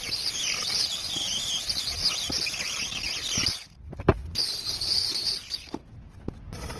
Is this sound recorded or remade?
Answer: recorded